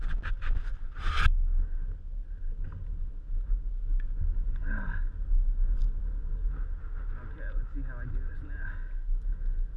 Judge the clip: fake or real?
real